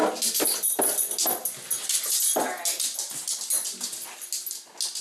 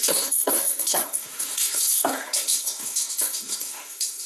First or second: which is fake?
second